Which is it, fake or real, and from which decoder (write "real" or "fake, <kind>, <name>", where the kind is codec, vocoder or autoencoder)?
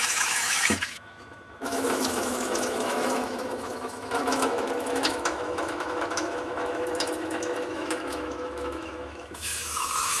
fake, autoencoder, DAC-VAE